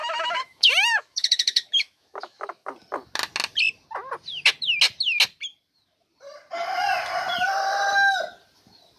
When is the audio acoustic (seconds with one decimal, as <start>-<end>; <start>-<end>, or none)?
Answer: 2.7-9.0